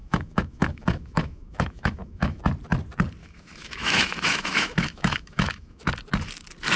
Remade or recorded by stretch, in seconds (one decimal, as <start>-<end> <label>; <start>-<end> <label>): 0.0-2.4 remade; 2.4-3.2 recorded; 3.2-5.9 remade; 5.9-6.8 recorded